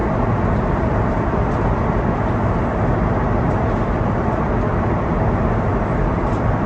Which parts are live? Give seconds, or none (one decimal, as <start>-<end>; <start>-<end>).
0.0-6.7